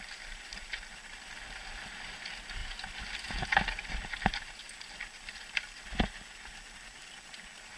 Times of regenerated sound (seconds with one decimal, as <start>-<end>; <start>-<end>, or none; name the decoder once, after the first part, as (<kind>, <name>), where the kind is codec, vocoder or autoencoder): none